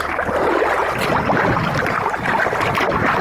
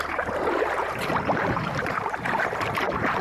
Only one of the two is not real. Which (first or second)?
second